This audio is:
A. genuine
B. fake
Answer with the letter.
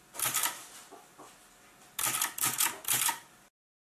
A